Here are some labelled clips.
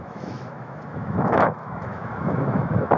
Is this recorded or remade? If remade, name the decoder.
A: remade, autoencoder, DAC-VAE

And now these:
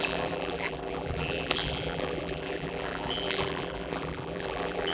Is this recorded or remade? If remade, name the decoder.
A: remade, vocoder, BigVGAN v2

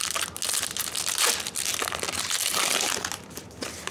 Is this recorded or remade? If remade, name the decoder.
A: recorded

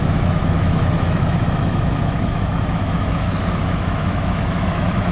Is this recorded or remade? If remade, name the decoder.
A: remade, autoencoder, DAC-VAE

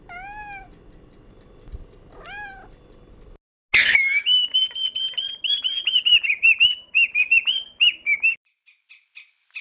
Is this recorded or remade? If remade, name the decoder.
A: recorded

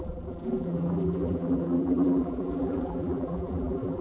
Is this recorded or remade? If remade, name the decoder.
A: remade, vocoder, BigVGAN v2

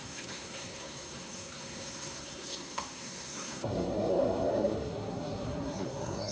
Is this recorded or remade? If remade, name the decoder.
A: remade, codec, SNAC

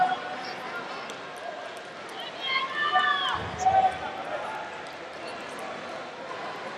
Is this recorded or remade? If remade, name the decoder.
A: recorded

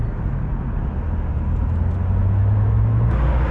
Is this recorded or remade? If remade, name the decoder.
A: recorded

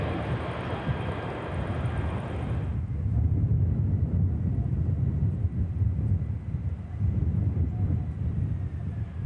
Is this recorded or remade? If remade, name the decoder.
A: recorded